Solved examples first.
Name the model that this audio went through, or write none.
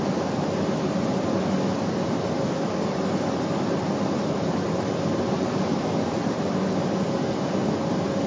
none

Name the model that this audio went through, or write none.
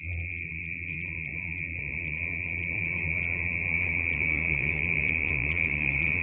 vocoder, Vocos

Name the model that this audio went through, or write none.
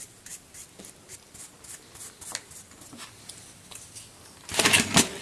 none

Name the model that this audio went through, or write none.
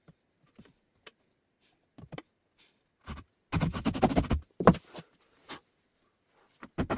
none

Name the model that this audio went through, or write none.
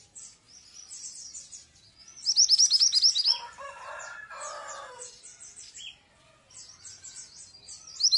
none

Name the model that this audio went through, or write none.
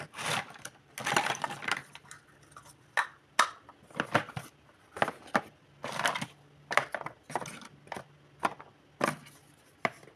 none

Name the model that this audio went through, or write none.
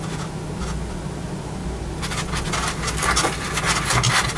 none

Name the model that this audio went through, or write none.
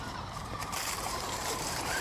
vocoder, BigVGAN v2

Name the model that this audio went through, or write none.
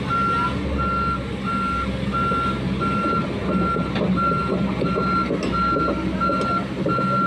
none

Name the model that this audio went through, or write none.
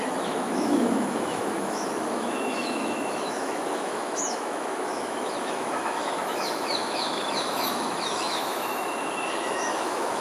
autoencoder, DAC-VAE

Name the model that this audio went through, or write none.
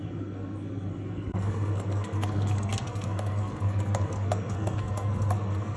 codec, SNAC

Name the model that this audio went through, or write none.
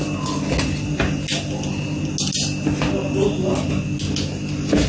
none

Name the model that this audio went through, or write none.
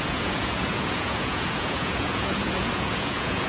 vocoder, Vocos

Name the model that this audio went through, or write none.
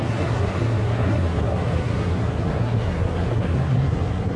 codec, SNAC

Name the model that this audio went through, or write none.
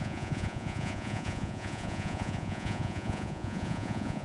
vocoder, Vocos